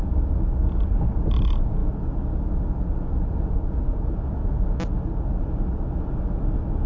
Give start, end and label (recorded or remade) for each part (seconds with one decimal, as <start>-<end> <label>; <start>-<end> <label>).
0.0-6.9 recorded